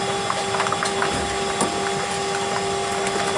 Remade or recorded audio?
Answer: recorded